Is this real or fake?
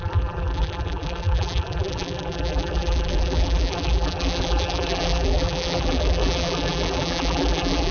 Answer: fake